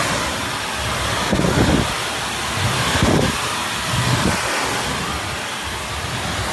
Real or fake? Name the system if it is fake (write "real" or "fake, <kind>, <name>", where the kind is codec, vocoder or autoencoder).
real